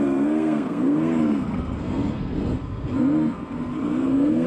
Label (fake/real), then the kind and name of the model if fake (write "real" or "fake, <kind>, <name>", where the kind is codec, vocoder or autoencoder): fake, codec, SNAC